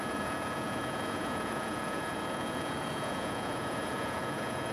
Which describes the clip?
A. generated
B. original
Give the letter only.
A